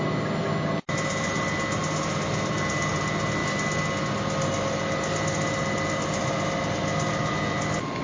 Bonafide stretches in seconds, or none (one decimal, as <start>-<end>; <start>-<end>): 0.0-8.0